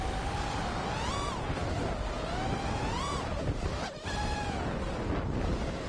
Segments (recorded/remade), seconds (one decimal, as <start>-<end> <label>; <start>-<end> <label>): 0.0-5.9 recorded